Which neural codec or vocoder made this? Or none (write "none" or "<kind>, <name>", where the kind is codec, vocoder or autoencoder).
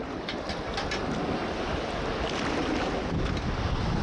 none